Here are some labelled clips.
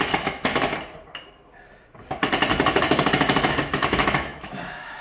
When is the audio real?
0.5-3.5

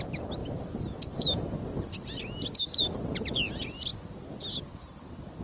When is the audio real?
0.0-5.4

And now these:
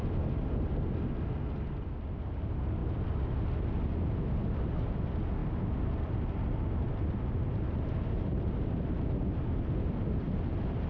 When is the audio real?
0.0-10.9

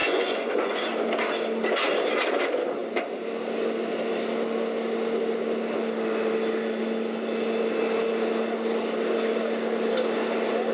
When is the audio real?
0.8-10.7

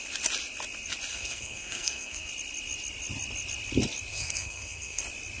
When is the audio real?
0.0-1.1; 2.3-4.1; 5.0-5.4

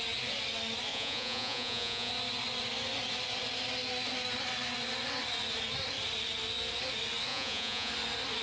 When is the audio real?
0.0-0.9; 2.1-7.3; 7.9-8.4